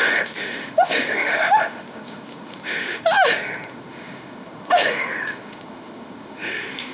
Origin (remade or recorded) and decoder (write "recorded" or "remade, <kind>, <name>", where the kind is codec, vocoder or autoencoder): remade, autoencoder, DAC-VAE